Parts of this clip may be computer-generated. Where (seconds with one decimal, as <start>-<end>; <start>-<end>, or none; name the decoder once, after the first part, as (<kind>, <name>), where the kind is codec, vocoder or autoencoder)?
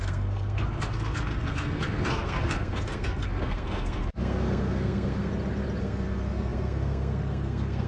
0.0-5.3 (codec, SNAC); 5.8-7.9